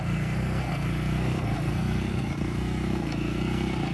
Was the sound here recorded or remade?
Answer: remade